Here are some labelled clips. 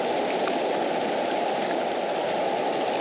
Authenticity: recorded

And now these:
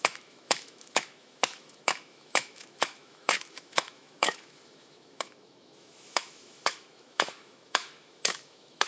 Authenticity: remade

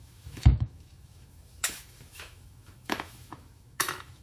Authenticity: remade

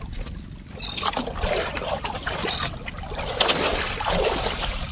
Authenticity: recorded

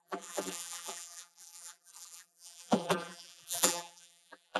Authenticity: remade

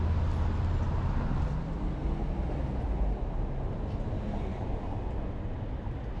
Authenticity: recorded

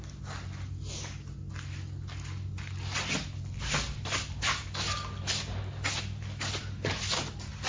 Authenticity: recorded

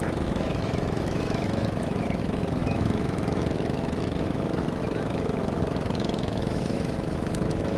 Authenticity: remade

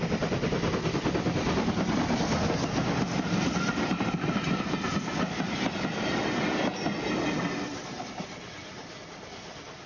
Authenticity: recorded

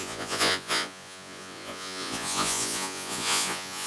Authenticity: remade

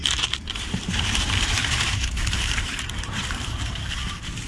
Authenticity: remade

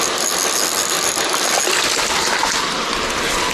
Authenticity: recorded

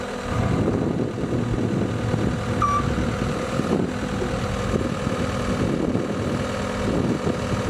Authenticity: recorded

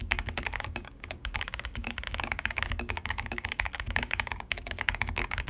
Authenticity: remade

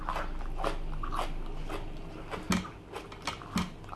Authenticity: recorded